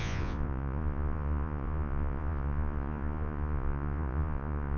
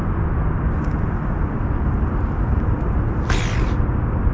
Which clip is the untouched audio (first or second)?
second